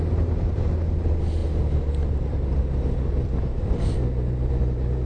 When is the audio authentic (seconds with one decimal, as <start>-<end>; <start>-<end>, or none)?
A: 0.0-5.1